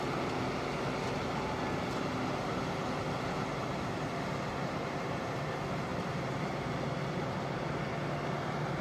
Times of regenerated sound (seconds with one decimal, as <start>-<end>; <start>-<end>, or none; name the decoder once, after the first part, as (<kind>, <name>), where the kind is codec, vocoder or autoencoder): 4.5-5.5 (vocoder, BigVGAN v2); 5.9-7.2